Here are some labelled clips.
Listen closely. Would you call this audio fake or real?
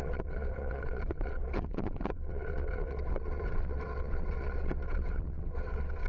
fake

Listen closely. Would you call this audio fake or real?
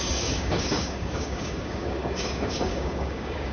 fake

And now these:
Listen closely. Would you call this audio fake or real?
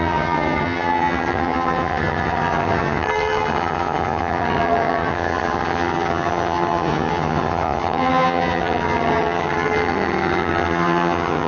fake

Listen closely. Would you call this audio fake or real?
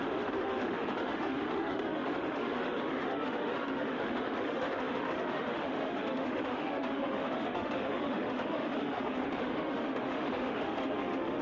fake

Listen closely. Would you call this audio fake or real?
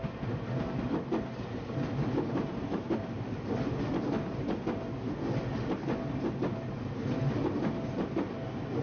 real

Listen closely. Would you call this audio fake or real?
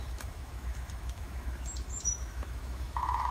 fake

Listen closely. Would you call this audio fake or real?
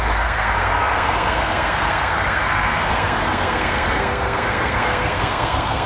fake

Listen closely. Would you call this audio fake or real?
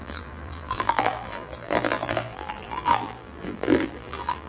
fake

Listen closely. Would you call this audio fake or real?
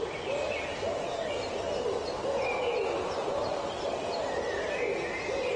real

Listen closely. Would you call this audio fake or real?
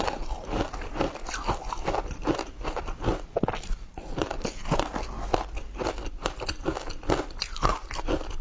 real